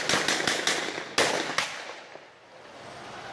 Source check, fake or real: real